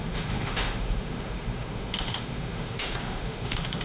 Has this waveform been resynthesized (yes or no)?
yes